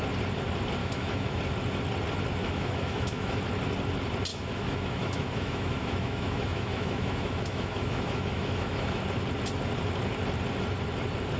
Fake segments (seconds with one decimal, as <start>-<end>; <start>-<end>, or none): 0.8-1.4; 2.4-3.4; 4.3-9.0